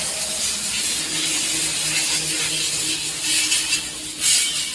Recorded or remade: recorded